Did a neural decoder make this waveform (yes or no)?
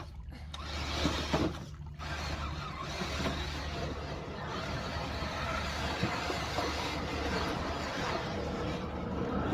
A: no